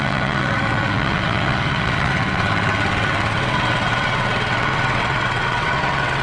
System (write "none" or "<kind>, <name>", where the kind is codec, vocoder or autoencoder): vocoder, WaveNeXt